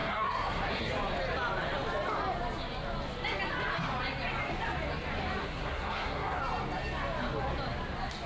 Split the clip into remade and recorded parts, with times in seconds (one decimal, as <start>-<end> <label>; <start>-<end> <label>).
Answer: 0.0-0.9 remade; 0.9-5.4 recorded; 5.4-6.4 remade; 6.4-8.3 recorded